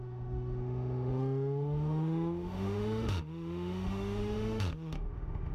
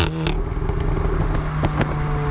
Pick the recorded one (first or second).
second